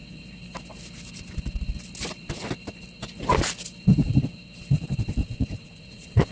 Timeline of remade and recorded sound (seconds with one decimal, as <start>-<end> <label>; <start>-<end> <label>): 0.0-5.2 recorded; 5.2-6.3 remade